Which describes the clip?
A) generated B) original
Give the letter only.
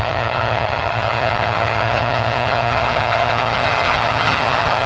A